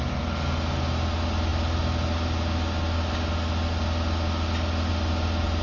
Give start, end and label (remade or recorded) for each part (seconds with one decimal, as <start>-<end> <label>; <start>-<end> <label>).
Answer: 0.0-5.6 recorded